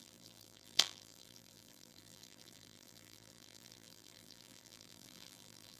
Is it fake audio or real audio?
fake